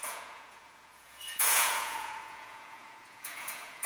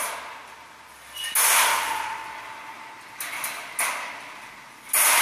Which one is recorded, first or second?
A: second